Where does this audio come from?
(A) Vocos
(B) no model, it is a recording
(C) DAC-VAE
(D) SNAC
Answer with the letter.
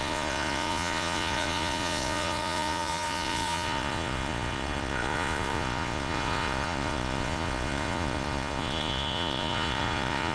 A